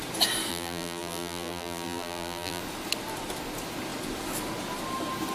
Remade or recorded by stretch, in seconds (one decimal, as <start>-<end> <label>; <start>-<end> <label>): 0.0-0.5 recorded; 0.5-2.6 remade; 2.6-5.3 recorded